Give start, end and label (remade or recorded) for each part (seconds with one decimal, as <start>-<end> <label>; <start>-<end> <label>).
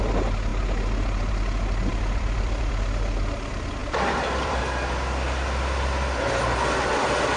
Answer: 0.0-1.9 recorded; 1.9-2.7 remade; 2.7-3.8 recorded; 3.8-4.6 remade; 4.6-7.4 recorded